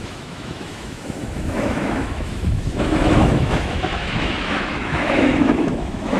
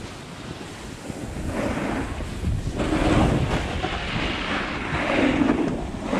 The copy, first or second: first